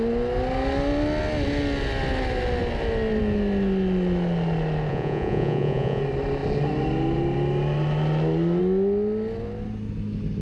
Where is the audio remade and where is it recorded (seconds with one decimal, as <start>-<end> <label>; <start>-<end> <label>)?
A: 0.0-4.9 recorded; 4.9-6.0 remade; 6.0-10.4 recorded